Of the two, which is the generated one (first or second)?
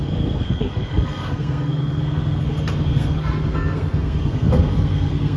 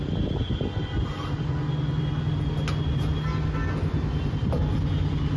first